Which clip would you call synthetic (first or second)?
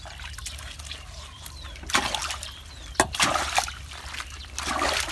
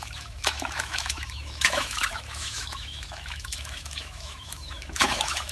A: second